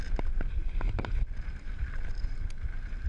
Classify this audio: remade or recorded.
recorded